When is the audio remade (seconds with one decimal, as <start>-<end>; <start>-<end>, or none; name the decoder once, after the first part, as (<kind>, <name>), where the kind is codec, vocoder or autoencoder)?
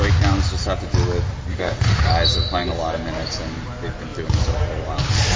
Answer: 1.5-2.1 (autoencoder, DAC-VAE)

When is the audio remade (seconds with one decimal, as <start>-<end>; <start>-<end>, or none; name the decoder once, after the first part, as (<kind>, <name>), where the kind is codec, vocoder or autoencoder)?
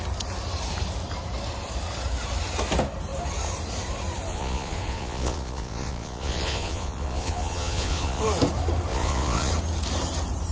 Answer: 4.3-8.2 (vocoder, Vocos); 8.9-9.5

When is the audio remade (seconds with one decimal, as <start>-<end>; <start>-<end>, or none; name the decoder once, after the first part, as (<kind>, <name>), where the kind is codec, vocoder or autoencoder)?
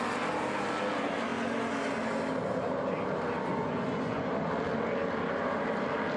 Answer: 3.5-4.3 (vocoder, Vocos)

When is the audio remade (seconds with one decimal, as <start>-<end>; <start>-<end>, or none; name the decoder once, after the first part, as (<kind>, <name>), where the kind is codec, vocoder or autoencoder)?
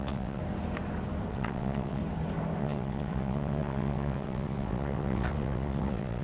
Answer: 0.0-0.4 (vocoder, WaveNeXt); 1.3-2.0; 2.6-6.2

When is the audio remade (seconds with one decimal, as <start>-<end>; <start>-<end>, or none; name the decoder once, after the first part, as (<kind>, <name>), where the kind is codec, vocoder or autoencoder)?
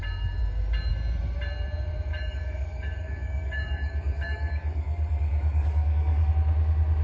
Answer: 2.1-6.3 (codec, DAC)